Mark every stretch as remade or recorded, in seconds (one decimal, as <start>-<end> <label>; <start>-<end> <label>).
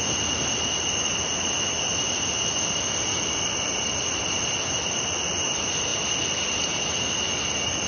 0.0-7.9 recorded